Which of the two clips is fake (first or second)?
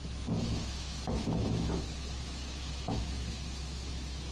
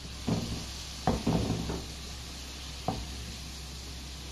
first